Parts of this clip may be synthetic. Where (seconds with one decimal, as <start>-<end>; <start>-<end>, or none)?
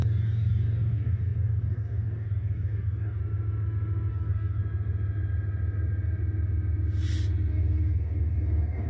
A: 0.0-3.2; 4.1-4.6; 7.5-8.9